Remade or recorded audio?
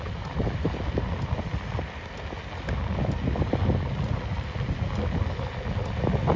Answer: recorded